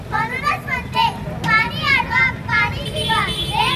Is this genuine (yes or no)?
yes